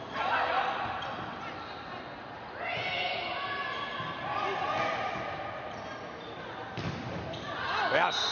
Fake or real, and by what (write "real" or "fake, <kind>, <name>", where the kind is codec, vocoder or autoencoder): real